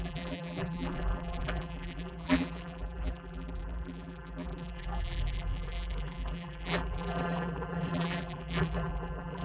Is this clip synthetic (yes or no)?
yes